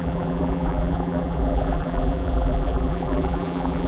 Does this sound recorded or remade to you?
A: remade